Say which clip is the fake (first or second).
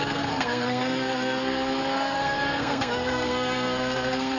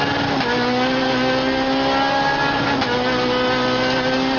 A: first